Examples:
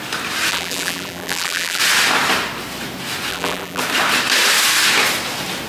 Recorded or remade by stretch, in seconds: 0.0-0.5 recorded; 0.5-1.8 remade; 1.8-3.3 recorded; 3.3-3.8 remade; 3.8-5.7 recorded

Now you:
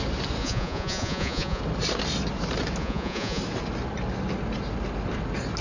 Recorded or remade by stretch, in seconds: 0.0-0.4 recorded; 0.4-1.6 remade; 1.6-2.8 recorded; 2.8-3.4 remade; 3.4-5.6 recorded

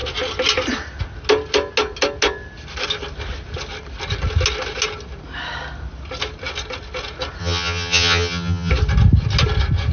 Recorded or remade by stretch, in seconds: 0.0-7.4 recorded; 7.4-8.7 remade; 8.7-9.9 recorded

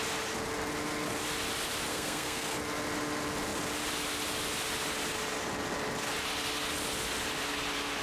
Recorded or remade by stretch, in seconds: 0.0-1.9 recorded; 1.9-2.6 remade; 2.6-8.0 recorded

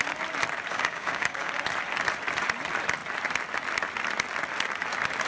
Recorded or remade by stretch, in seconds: 0.0-0.7 recorded; 0.7-1.5 remade; 1.5-5.3 recorded

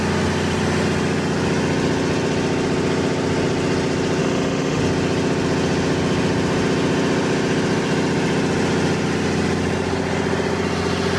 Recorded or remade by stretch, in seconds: 0.0-4.2 recorded; 4.2-4.8 remade; 4.8-11.2 recorded

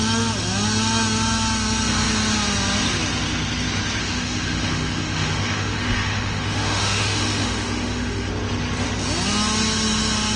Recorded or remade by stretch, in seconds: 0.0-4.0 recorded; 4.0-8.3 remade; 8.3-10.4 recorded

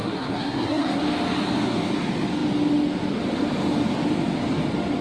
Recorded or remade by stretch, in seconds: 0.0-1.0 remade; 1.0-5.0 recorded